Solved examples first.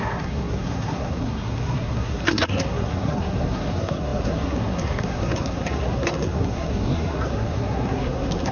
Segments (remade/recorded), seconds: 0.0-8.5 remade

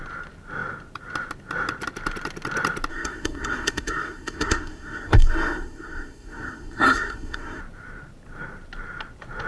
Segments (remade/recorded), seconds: 0.0-2.9 recorded; 2.9-7.6 remade; 7.6-9.5 recorded

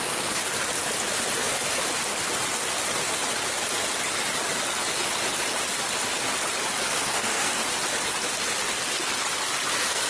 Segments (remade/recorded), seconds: 0.0-0.4 remade; 0.4-1.4 recorded; 1.4-1.8 remade; 1.8-6.8 recorded; 6.8-7.6 remade; 7.6-9.7 recorded; 9.7-10.1 remade

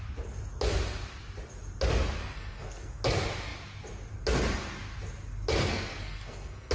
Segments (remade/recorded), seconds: 0.0-2.2 recorded; 2.2-3.0 remade; 3.0-5.6 recorded; 5.6-6.7 remade